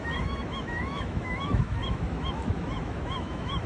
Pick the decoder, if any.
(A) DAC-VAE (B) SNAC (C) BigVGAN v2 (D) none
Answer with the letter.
A